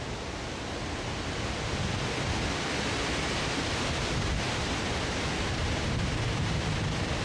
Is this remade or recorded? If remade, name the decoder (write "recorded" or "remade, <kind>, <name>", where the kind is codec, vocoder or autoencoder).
recorded